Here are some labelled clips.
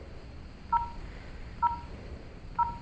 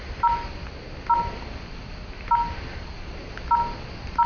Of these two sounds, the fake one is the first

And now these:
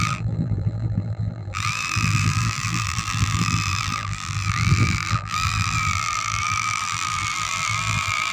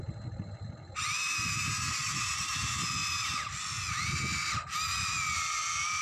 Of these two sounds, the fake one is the first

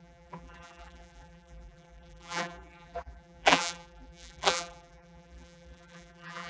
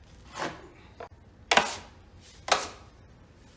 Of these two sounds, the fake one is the first